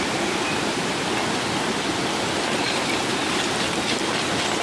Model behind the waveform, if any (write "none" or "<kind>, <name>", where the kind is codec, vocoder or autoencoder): none